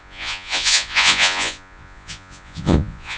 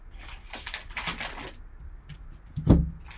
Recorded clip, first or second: second